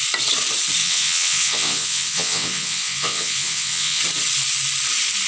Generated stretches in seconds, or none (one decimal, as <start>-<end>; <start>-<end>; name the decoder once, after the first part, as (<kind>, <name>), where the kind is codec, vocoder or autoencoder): 0.8-4.0 (vocoder, WaveNeXt)